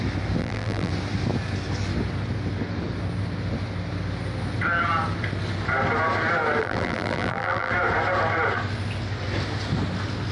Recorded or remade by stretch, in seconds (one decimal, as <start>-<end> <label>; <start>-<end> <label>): 0.0-0.4 recorded; 0.4-0.9 remade; 0.9-6.6 recorded; 6.6-7.7 remade; 7.7-10.3 recorded